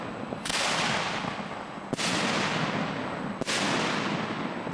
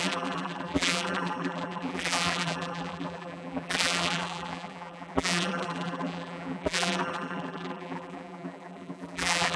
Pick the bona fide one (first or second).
first